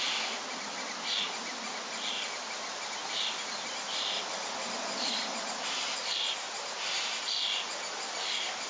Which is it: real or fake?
real